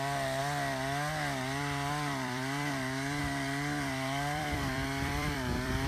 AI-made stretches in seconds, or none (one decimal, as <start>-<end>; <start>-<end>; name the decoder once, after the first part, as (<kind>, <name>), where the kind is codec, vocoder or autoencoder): 0.0-5.9 (vocoder, BigVGAN v2)